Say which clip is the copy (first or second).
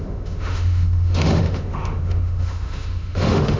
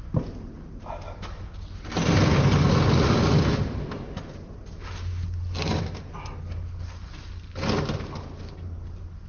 first